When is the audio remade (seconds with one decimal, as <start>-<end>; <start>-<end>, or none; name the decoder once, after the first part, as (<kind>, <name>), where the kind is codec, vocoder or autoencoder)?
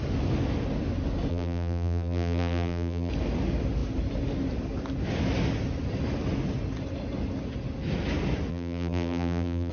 1.3-3.1 (vocoder, BigVGAN v2); 8.5-9.7